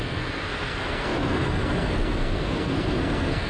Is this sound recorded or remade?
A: remade